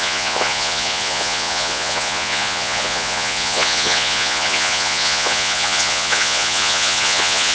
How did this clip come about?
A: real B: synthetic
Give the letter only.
B